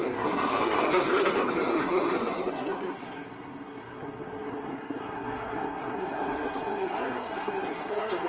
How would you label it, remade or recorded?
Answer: remade